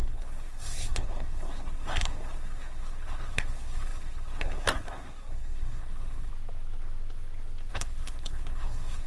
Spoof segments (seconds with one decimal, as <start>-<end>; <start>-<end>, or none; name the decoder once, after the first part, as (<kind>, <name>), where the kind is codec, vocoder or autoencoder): 0.0-6.3 (codec, SNAC); 7.7-9.1